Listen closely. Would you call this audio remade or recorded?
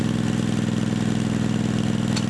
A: recorded